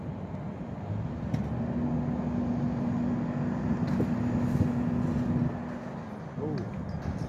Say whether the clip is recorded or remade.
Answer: recorded